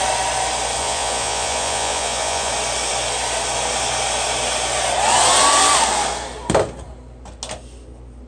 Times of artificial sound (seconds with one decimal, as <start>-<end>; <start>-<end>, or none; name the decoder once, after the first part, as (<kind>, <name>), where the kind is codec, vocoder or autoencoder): 0.8-2.5 (vocoder, Vocos)